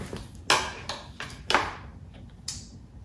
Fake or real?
real